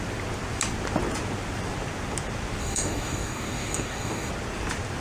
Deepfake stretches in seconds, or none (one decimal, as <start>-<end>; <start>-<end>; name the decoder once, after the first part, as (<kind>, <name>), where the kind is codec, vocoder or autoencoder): 2.6-4.3 (codec, DAC)